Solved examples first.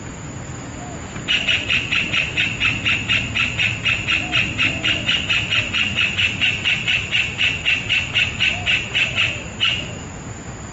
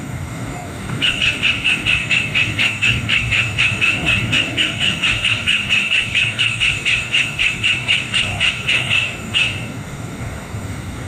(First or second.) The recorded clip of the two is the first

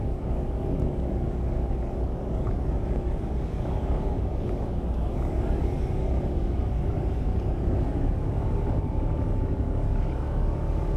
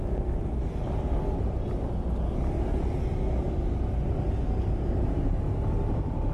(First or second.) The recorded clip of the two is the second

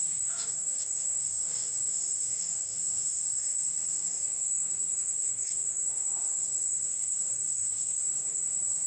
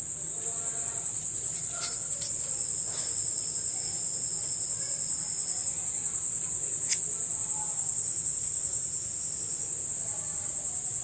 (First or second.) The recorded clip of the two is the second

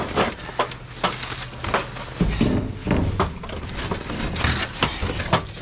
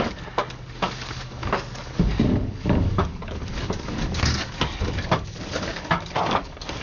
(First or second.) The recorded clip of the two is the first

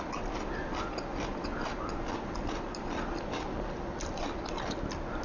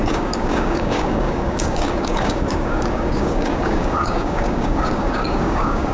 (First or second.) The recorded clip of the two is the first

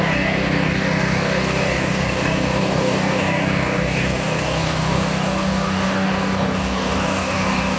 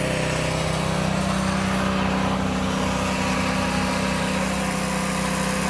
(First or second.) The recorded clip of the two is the second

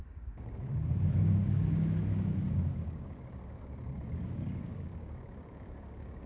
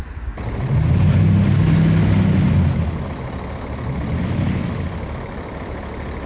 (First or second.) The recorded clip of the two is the second